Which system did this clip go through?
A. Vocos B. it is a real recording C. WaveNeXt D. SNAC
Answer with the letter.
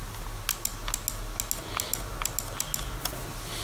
B